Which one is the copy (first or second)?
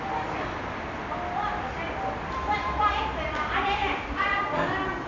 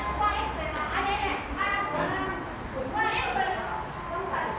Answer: first